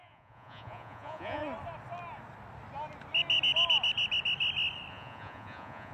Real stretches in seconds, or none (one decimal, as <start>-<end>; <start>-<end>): 1.4-4.9